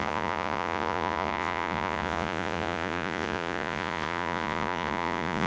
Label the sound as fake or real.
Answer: fake